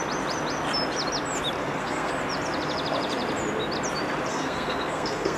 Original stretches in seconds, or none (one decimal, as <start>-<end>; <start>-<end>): 0.0-1.6; 2.1-4.3